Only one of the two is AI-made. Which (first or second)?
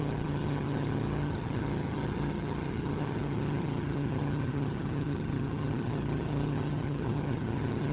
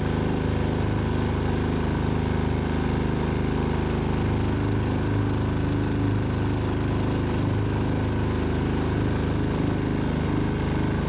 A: first